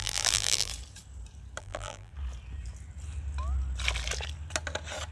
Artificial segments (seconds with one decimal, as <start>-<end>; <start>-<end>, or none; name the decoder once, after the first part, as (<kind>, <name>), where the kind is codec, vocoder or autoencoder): 0.0-0.7 (vocoder, BigVGAN v2); 1.6-2.1